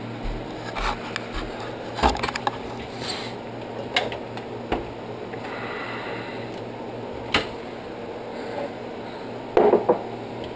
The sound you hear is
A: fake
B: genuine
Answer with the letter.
B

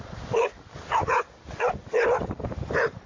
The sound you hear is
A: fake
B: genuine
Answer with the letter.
B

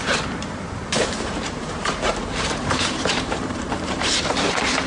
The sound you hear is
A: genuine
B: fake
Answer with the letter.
B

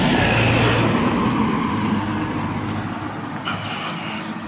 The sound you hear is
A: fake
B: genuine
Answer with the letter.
B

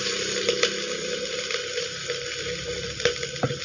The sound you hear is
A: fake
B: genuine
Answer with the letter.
B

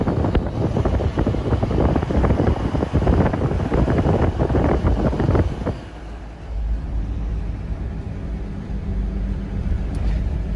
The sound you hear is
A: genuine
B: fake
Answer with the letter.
B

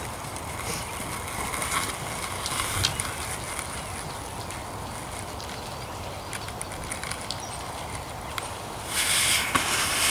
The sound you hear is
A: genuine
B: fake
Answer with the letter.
A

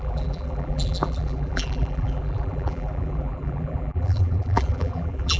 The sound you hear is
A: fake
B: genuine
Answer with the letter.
A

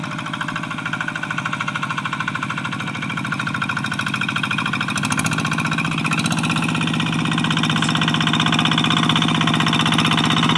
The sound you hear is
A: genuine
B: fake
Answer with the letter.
A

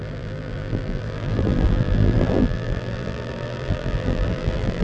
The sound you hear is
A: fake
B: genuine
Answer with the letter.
A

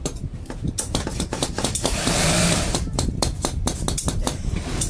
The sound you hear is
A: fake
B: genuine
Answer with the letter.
A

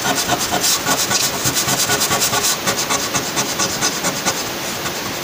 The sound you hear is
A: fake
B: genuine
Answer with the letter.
B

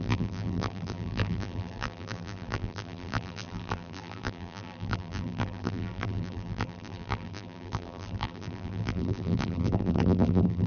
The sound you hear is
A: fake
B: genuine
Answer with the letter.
A